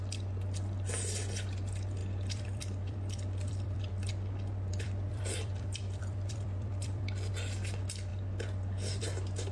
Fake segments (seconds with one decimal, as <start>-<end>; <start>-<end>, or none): 2.0-4.1; 4.7-7.3